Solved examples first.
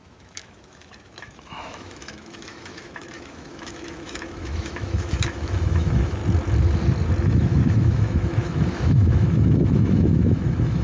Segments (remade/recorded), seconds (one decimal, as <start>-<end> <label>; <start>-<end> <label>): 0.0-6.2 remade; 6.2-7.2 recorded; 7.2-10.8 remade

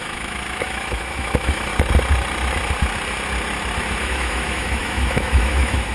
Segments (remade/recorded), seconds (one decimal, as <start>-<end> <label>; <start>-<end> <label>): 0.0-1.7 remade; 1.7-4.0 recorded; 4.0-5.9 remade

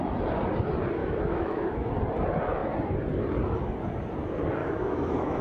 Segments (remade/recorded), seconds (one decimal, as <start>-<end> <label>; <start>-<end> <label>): 0.0-1.0 recorded; 1.0-1.9 remade; 1.9-4.6 recorded; 4.6-5.4 remade